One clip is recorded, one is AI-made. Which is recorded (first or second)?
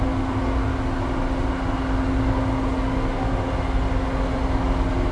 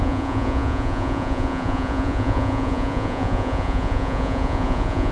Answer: first